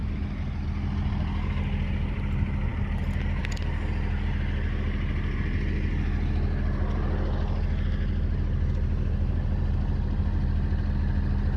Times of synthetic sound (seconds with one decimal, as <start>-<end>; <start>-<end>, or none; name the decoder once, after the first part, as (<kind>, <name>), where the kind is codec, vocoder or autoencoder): none